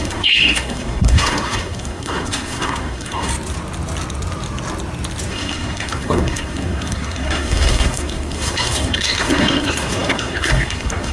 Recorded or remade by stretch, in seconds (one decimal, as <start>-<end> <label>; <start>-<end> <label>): 0.0-3.3 remade; 3.3-5.3 recorded; 5.3-11.1 remade